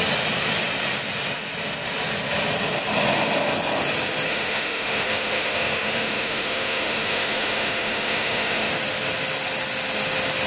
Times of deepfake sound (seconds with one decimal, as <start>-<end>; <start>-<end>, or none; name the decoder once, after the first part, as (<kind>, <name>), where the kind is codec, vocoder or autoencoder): 4.3-8.7 (autoencoder, DAC-VAE)